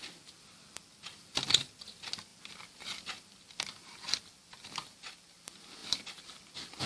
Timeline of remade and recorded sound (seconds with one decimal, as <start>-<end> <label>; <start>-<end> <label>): 0.0-6.9 recorded